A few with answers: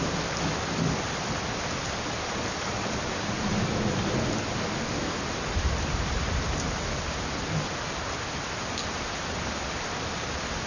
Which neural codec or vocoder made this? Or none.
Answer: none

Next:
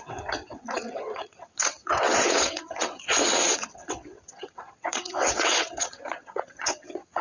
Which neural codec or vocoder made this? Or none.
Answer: vocoder, WaveNeXt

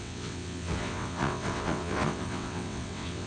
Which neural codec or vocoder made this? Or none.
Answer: vocoder, WaveNeXt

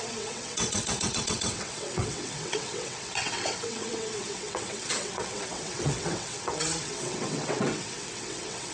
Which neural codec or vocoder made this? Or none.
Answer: vocoder, WaveNeXt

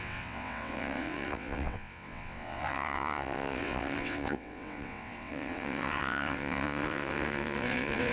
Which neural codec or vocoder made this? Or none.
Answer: vocoder, WaveNeXt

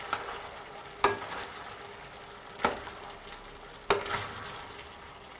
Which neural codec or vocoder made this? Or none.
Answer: none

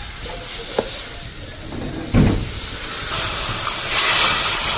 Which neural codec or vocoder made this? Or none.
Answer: none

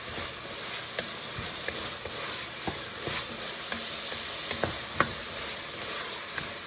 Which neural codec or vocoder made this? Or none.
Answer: none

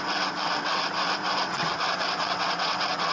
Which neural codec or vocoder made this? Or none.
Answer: vocoder, WaveNeXt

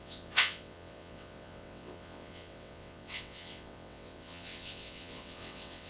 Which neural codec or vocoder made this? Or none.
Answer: vocoder, WaveNeXt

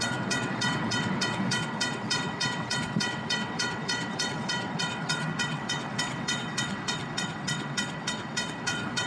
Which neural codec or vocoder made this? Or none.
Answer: vocoder, WaveNeXt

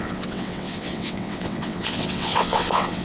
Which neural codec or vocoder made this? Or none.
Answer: vocoder, WaveNeXt